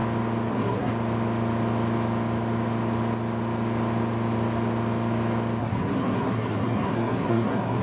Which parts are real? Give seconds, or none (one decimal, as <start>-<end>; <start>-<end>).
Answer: 0.0-0.5; 0.9-5.6